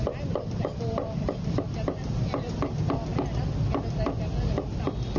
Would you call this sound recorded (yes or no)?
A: yes